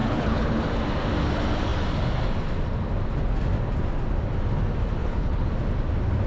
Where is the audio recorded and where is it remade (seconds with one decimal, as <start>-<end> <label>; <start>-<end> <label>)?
0.0-0.6 remade; 0.6-5.0 recorded; 5.0-5.5 remade; 5.5-6.3 recorded